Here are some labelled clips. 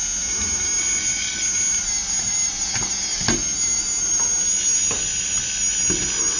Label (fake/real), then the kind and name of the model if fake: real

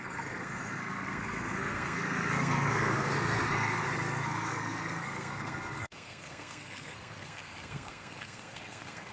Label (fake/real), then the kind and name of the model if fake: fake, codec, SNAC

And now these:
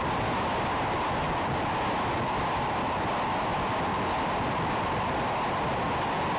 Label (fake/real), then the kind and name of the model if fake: real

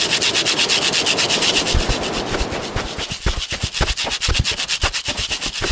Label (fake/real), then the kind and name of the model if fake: real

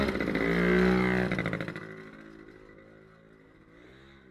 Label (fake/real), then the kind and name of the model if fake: real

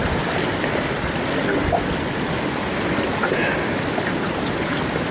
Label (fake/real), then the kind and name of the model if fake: real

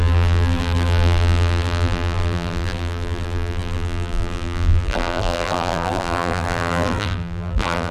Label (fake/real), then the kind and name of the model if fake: fake, vocoder, BigVGAN v2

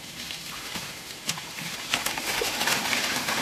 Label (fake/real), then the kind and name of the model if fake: fake, autoencoder, DAC-VAE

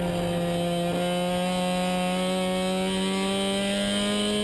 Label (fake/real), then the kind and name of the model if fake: real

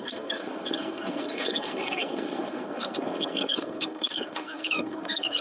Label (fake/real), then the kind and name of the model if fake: fake, codec, SNAC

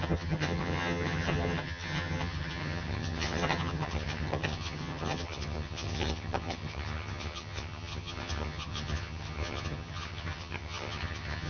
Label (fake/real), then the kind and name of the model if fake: fake, vocoder, HiFi-GAN